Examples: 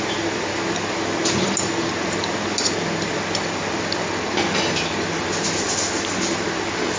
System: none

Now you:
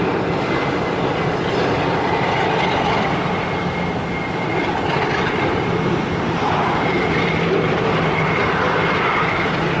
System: vocoder, BigVGAN v2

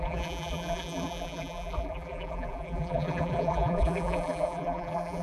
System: vocoder, BigVGAN v2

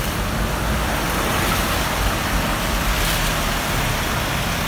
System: none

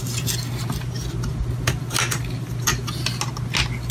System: none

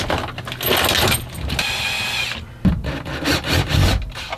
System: none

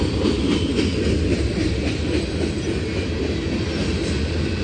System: none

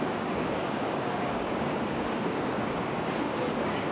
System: codec, DAC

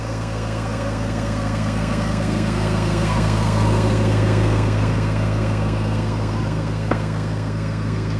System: codec, SNAC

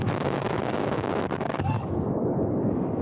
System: codec, DAC